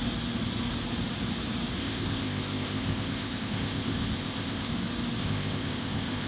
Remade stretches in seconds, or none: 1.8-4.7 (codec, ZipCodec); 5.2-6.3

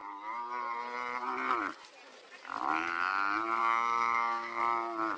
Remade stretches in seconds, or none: 3.6-4.6 (codec, DAC)